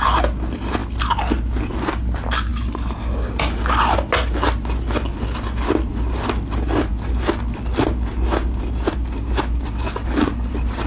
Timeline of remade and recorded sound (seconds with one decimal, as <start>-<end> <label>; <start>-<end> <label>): 0.0-10.9 recorded